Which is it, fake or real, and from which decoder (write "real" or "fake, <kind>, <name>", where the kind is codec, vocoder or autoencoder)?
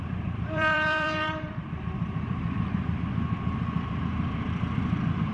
fake, vocoder, BigVGAN v2